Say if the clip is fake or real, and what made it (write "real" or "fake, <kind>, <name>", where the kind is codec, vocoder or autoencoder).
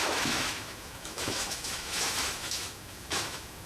fake, autoencoder, DAC-VAE